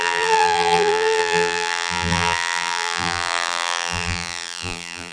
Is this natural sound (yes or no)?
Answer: no